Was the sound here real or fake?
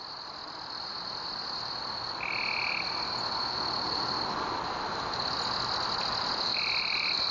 real